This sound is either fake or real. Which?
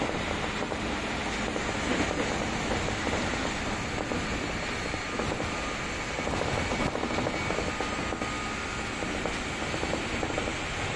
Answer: real